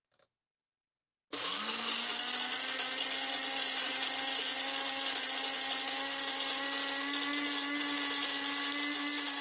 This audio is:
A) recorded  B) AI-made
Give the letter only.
A